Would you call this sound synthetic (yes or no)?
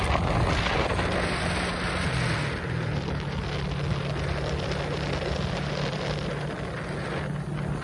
no